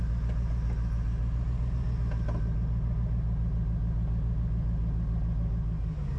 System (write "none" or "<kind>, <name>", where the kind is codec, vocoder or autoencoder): none